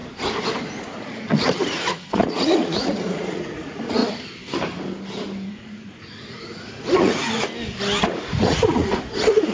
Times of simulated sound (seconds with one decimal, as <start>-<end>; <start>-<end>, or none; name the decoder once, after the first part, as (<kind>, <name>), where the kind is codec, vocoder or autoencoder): 0.7-4.0 (vocoder, Vocos); 5.5-7.5; 8.0-9.5

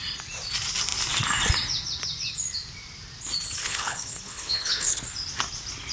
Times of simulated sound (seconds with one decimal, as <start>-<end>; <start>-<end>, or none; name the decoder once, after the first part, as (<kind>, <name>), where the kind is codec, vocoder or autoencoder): 3.6-5.0 (codec, HILCodec)

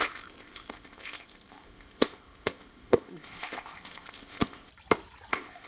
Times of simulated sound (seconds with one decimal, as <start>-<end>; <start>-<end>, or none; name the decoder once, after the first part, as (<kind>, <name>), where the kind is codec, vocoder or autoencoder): 0.0-4.7 (codec, ZipCodec); 5.3-5.7